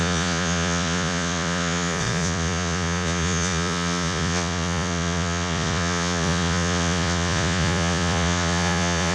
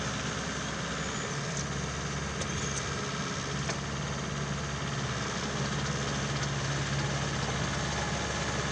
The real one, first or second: second